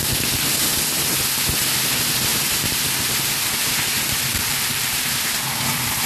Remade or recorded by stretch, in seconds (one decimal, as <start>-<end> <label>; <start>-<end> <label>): 0.0-2.3 recorded; 2.3-2.8 remade; 2.8-4.3 recorded; 4.3-5.1 remade; 5.1-6.1 recorded